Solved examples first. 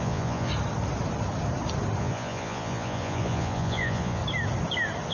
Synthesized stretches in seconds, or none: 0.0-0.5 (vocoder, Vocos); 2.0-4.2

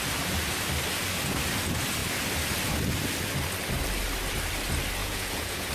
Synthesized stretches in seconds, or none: 5.0-5.7 (vocoder, Vocos)